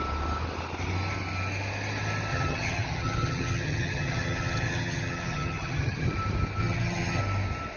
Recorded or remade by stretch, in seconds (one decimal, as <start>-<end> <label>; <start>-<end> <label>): 0.0-2.3 recorded; 2.3-6.1 remade; 6.1-6.6 recorded; 6.6-7.2 remade; 7.2-7.8 recorded

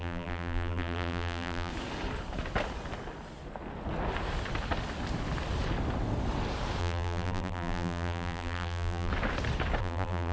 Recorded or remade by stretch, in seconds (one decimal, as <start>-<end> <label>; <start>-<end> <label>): 0.0-1.7 remade; 1.7-6.8 recorded; 6.8-9.1 remade; 9.1-9.8 recorded; 9.8-10.3 remade

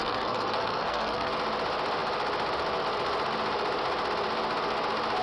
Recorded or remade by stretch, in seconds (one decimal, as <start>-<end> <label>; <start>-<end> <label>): 0.0-1.3 remade; 1.3-5.2 recorded

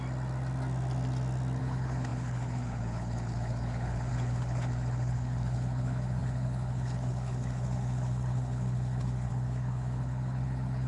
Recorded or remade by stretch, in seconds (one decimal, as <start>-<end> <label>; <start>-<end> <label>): 0.0-1.6 recorded; 1.6-10.9 remade